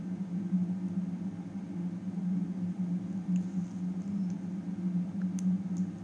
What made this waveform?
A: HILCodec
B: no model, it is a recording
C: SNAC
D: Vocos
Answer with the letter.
B